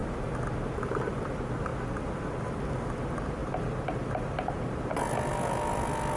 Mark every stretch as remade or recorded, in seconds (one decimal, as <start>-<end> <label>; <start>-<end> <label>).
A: 0.0-3.4 recorded; 3.4-4.8 remade; 4.8-6.2 recorded